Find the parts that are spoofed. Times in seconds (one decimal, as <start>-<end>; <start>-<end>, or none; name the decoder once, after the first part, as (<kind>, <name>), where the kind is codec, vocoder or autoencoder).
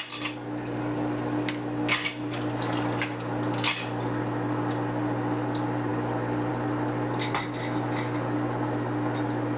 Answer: none